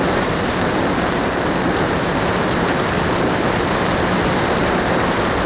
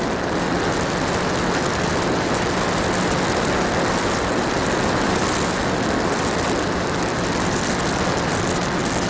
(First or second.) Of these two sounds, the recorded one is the second